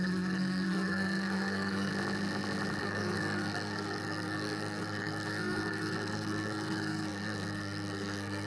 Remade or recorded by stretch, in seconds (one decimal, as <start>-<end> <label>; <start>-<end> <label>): 0.0-1.9 remade; 1.9-2.8 recorded; 2.8-8.5 remade